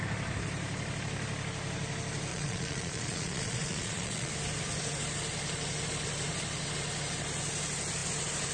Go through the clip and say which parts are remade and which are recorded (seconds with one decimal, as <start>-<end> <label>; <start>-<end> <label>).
0.0-2.3 recorded; 2.3-4.3 remade; 4.3-8.5 recorded